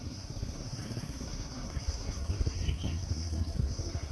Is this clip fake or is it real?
fake